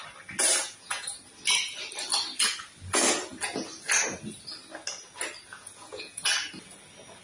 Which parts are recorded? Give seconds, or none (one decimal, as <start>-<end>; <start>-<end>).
0.0-0.6; 1.2-5.5; 6.3-7.2